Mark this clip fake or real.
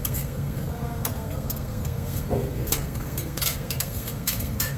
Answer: fake